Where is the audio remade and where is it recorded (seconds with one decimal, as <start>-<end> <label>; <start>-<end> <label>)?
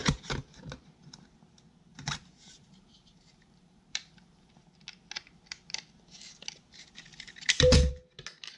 0.0-0.6 remade; 0.6-1.9 recorded; 1.9-4.5 remade; 4.5-7.1 recorded; 7.1-7.9 remade; 7.9-8.6 recorded